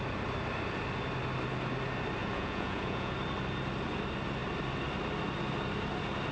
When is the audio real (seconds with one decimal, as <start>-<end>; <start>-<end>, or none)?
0.0-2.2; 3.1-6.3

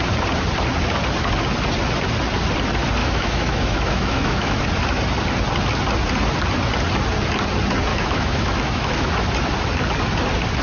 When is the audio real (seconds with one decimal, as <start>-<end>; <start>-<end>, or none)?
0.0-3.0; 4.6-7.9; 9.1-10.6

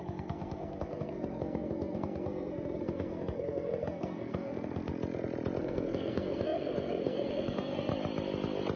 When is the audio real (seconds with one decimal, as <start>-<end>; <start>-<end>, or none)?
4.9-5.6; 7.9-8.8